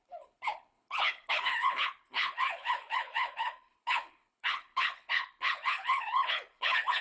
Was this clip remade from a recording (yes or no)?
yes